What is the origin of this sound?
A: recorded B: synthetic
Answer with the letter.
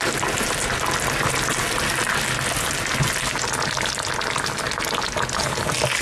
A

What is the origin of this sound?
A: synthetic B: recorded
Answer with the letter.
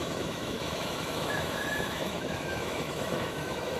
A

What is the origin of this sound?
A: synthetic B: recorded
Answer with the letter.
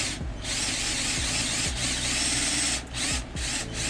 B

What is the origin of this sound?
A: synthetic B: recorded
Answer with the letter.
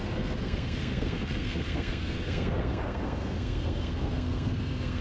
A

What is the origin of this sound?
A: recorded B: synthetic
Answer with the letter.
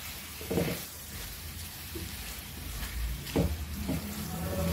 B